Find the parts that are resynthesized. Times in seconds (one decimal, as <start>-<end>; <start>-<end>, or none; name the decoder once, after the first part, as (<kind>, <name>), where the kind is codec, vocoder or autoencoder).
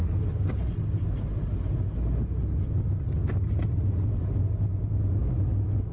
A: none